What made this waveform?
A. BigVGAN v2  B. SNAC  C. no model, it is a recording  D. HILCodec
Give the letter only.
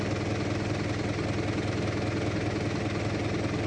C